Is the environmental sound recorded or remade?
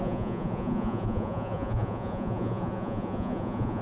remade